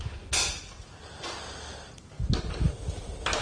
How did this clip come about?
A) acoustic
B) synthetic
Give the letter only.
A